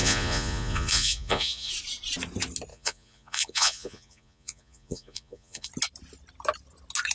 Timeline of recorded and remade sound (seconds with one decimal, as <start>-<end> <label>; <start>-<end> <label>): 0.0-1.7 remade; 1.7-2.7 recorded; 2.7-5.7 remade; 5.7-7.1 recorded